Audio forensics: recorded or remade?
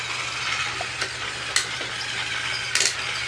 recorded